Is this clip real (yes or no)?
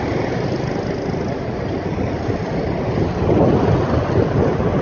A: yes